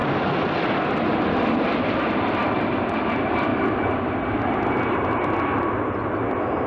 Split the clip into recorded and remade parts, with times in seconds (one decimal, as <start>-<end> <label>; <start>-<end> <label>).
0.0-3.5 remade; 3.5-5.0 recorded; 5.0-6.7 remade